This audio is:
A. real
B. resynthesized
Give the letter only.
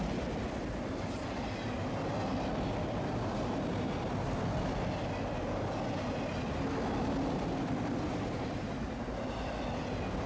A